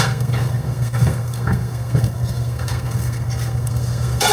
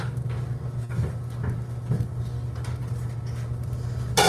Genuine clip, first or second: second